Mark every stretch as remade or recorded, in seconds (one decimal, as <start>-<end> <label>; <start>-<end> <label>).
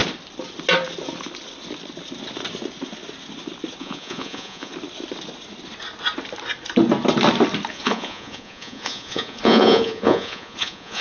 0.0-3.8 recorded; 3.8-4.7 remade; 4.7-7.7 recorded; 7.7-11.0 remade